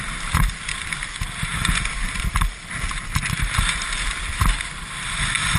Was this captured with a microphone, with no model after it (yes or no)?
yes